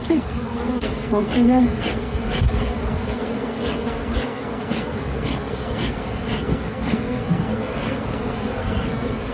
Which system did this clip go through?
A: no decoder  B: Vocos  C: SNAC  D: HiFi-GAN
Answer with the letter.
C